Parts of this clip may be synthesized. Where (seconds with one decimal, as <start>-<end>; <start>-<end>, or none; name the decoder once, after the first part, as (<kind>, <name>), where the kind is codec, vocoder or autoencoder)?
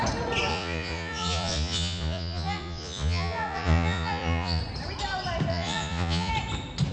0.5-4.6 (vocoder, Vocos); 5.5-6.3